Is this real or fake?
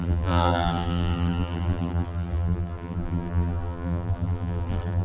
fake